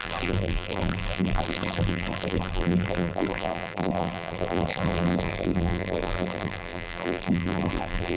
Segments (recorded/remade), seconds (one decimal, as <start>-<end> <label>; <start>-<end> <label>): 0.0-8.2 remade